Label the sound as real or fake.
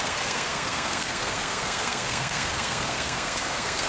fake